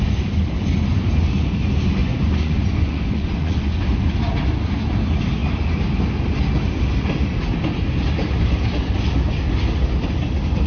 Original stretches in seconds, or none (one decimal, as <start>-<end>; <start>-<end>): 0.0-2.0; 3.8-10.7